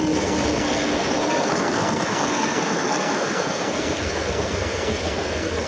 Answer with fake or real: fake